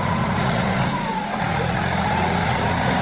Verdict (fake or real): fake